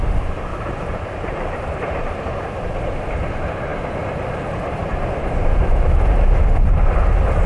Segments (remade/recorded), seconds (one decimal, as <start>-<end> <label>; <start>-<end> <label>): 0.0-0.5 recorded; 0.5-2.3 remade; 2.3-7.5 recorded